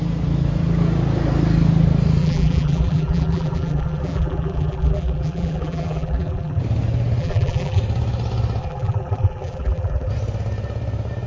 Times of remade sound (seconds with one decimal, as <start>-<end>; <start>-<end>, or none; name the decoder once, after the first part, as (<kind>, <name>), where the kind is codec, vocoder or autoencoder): 2.2-6.6 (vocoder, BigVGAN v2); 7.2-7.8; 8.6-10.1